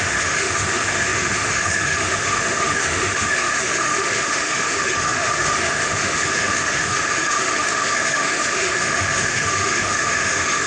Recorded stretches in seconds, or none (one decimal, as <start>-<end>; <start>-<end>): none